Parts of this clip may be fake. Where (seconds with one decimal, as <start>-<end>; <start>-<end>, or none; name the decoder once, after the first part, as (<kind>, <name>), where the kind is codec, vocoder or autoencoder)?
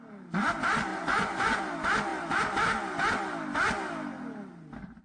0.9-1.6 (vocoder, Vocos)